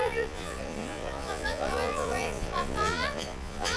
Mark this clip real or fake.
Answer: fake